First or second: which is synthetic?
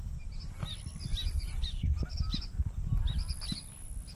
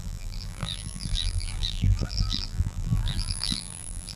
second